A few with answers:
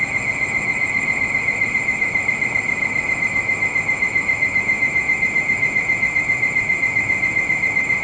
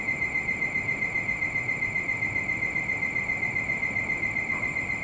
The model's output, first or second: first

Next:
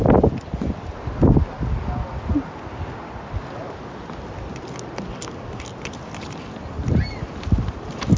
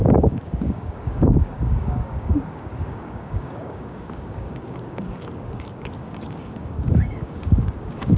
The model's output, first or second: second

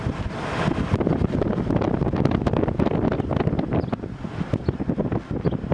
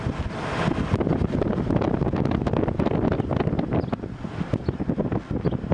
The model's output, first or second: first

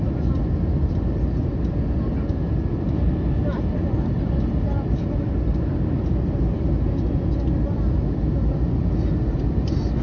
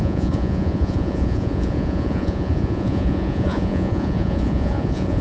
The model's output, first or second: second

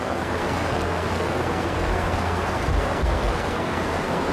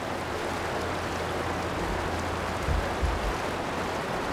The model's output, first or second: first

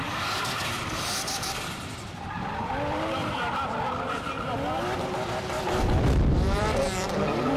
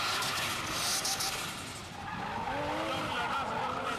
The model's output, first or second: first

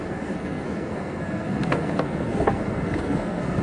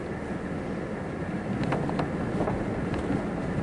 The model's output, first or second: first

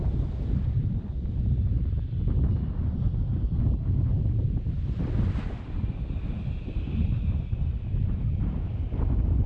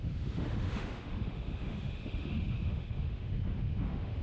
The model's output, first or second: second